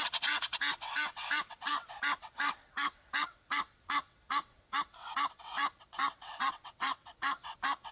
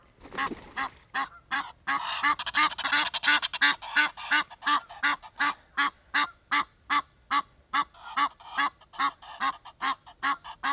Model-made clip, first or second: first